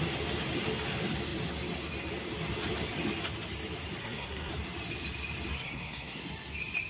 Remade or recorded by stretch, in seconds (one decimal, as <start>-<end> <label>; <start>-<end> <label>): 0.0-4.0 recorded; 4.0-4.5 remade; 4.5-5.5 recorded; 5.5-6.2 remade; 6.2-6.9 recorded